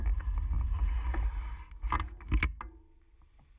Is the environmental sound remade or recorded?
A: recorded